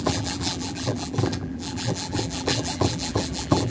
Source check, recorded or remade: remade